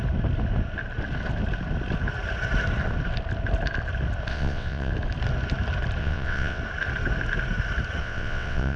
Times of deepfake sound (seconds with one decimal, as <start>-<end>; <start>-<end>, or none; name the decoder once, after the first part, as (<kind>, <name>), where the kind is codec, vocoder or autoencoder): 4.3-4.9 (vocoder, WaveNeXt); 6.0-6.6; 8.0-8.8